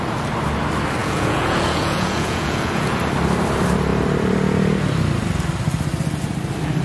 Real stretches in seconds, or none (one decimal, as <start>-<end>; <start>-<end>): 0.0-1.0; 3.0-6.8